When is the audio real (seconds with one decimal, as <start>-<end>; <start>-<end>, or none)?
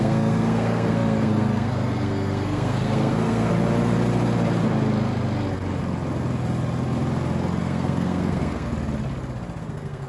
3.5-7.6; 8.7-9.6